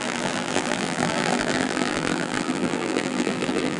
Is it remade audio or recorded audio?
remade